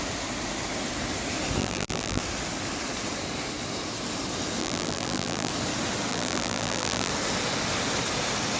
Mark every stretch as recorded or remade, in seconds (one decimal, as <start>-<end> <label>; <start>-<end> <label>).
0.0-1.6 recorded; 1.6-2.2 remade; 2.2-4.6 recorded; 4.6-5.5 remade; 5.5-6.1 recorded; 6.1-7.1 remade; 7.1-8.6 recorded